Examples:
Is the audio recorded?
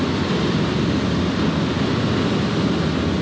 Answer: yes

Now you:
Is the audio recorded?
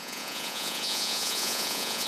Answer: no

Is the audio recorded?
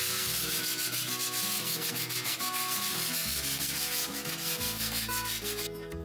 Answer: no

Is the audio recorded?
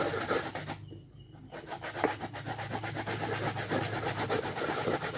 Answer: yes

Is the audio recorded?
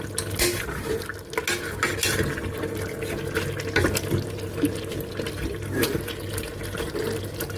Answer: yes